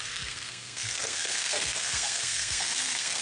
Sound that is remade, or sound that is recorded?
remade